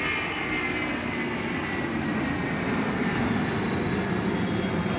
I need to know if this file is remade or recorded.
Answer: recorded